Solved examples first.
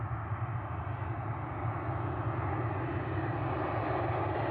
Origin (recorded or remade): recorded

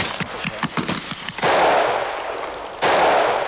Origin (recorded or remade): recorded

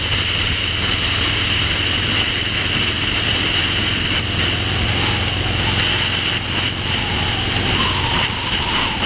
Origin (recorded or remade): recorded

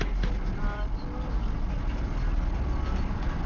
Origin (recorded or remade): recorded